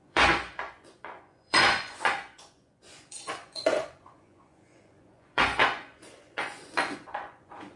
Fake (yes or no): yes